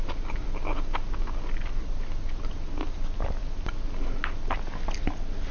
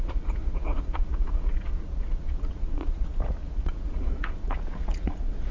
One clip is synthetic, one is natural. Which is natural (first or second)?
first